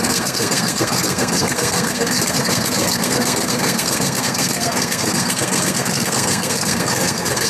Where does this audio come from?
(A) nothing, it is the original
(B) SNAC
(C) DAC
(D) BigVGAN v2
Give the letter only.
B